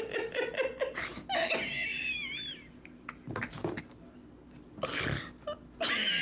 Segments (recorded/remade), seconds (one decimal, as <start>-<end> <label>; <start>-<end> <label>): 0.0-6.2 recorded